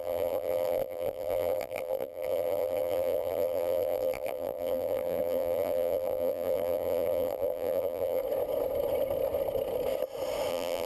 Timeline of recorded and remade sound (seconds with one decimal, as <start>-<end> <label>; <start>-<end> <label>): 0.0-8.2 remade; 8.2-10.5 recorded; 10.5-10.9 remade

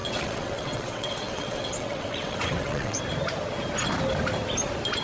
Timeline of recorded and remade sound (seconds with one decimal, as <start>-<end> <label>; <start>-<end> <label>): 0.0-3.0 remade; 3.0-5.0 recorded

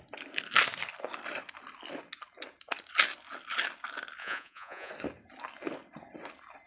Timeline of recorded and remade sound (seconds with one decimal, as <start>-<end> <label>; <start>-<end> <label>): 0.0-4.2 recorded; 4.2-4.9 remade; 4.9-6.7 recorded